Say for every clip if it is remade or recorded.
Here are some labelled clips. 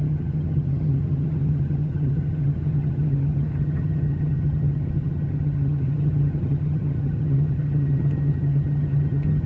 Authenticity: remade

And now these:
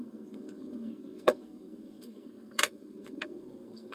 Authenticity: remade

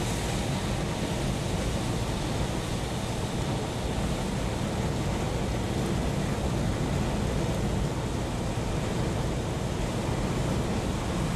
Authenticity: recorded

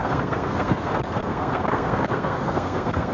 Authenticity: remade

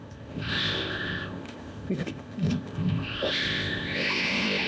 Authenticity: remade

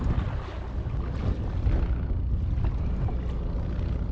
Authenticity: recorded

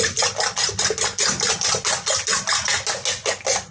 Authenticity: recorded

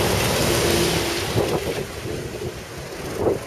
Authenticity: recorded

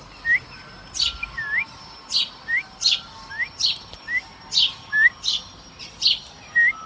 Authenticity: recorded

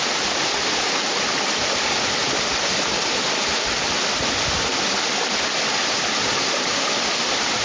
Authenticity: recorded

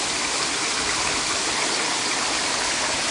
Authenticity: recorded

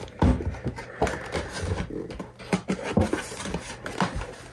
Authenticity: recorded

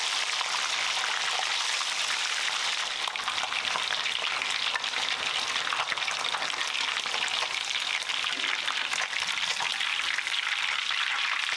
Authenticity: recorded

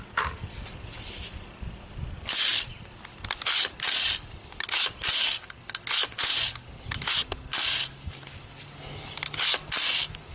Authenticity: recorded